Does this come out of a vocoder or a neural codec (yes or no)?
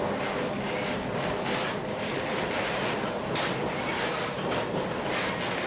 no